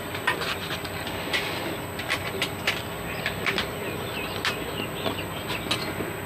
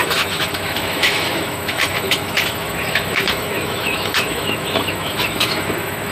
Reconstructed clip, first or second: second